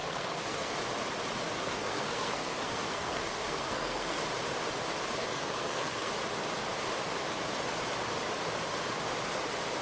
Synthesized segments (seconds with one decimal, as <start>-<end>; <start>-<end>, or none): 0.0-0.7; 1.6-4.2; 5.2-6.1